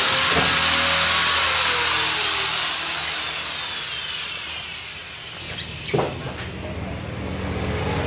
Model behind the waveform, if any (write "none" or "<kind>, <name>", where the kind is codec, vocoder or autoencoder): none